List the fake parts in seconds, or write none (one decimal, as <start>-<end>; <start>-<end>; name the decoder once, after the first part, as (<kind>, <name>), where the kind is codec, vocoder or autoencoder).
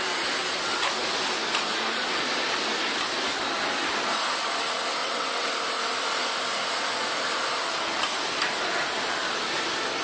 5.0-5.5 (vocoder, WaveNeXt)